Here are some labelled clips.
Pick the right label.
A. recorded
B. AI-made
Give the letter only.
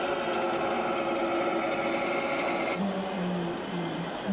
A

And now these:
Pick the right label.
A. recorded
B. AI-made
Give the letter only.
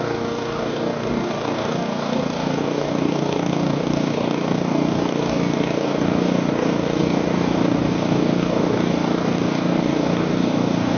B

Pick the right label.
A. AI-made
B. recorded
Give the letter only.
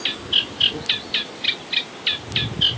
B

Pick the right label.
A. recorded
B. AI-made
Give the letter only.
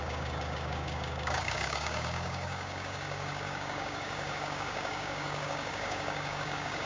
B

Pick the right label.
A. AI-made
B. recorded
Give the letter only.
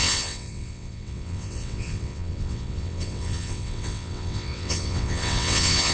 A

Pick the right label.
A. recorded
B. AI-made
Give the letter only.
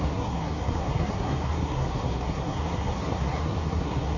B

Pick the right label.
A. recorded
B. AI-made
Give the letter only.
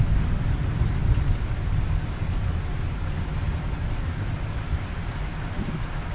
A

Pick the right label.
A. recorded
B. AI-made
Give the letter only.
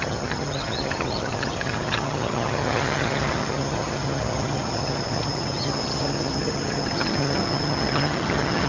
B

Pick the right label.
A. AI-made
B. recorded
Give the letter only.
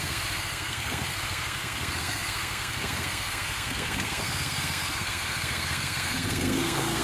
A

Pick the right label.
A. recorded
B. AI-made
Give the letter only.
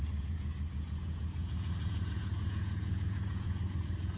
B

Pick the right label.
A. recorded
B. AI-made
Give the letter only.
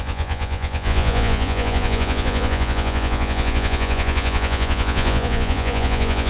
B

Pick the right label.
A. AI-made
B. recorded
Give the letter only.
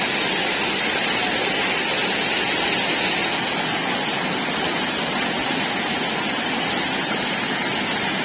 B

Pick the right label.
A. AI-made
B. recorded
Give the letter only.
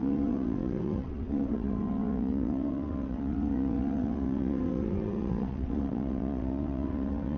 A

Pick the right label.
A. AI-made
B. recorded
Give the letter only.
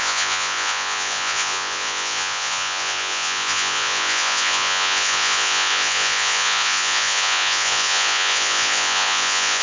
A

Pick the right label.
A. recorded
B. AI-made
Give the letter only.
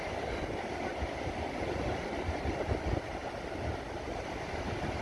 A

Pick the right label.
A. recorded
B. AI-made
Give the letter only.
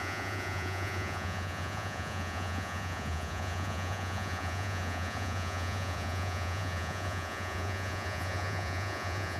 B